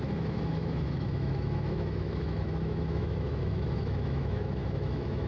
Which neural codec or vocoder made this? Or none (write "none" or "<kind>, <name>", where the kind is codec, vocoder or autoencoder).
autoencoder, DAC-VAE